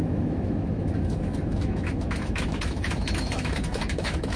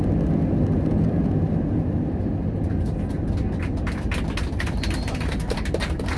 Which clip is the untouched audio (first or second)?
second